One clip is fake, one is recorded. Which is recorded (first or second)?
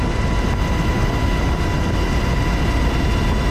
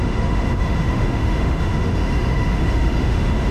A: first